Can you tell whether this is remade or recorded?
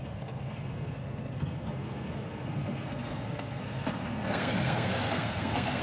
remade